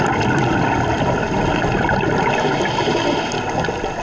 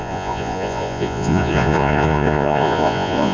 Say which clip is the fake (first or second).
second